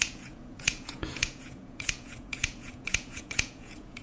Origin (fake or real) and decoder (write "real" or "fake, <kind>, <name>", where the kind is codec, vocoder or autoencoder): fake, vocoder, Vocos